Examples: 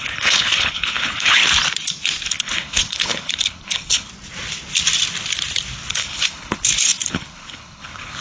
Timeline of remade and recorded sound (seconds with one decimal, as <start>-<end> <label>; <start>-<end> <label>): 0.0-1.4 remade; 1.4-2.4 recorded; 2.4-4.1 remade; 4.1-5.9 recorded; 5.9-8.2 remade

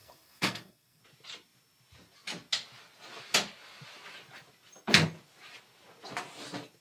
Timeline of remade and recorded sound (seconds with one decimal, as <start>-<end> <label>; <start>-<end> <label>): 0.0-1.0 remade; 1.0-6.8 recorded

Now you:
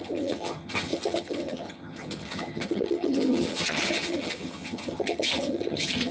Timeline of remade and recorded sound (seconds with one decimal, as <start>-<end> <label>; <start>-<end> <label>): 0.0-6.1 remade